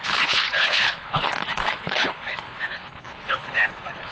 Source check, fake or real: fake